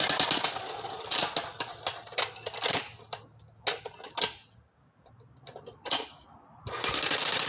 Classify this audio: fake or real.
real